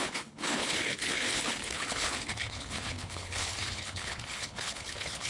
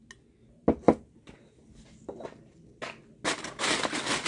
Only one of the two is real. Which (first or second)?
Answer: second